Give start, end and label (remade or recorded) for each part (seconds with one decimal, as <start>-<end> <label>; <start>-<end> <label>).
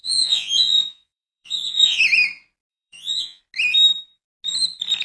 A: 0.0-2.0 remade; 2.0-2.7 recorded; 2.7-3.4 remade; 3.4-5.0 recorded